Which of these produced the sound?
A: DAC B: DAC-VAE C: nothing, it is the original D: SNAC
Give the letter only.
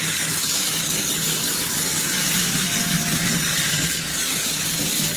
A